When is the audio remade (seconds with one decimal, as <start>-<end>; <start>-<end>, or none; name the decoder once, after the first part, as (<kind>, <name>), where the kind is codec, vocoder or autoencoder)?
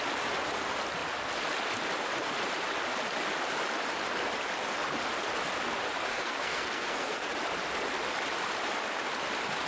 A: 6.1-7.3 (codec, SNAC)